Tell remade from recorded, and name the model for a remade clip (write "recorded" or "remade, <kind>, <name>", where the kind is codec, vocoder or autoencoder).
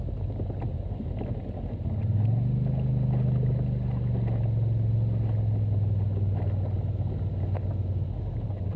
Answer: recorded